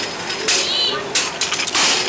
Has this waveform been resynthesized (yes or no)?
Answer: no